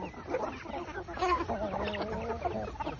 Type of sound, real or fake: real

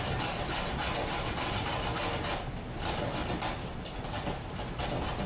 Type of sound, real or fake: real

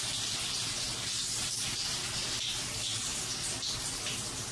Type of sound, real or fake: real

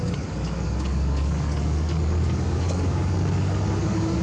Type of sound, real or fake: fake